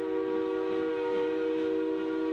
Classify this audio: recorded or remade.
recorded